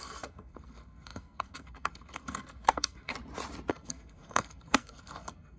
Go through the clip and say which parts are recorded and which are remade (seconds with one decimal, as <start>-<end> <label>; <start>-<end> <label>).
0.0-3.1 remade; 3.1-3.7 recorded; 3.7-5.6 remade